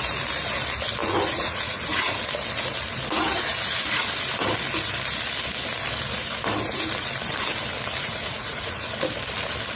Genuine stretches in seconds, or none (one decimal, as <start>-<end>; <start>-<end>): 0.0-1.0; 2.2-8.0; 8.8-9.8